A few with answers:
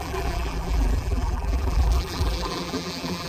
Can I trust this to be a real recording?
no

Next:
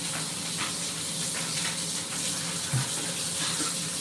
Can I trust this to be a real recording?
yes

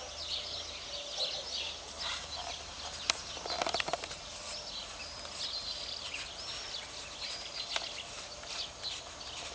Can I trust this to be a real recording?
yes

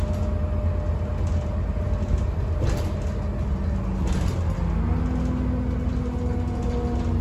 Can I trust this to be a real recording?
yes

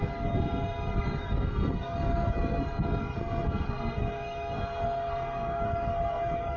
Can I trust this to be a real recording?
no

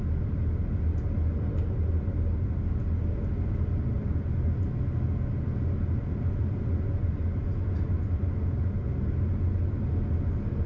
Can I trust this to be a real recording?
yes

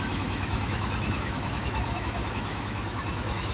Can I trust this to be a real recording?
no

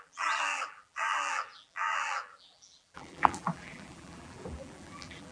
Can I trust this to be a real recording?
no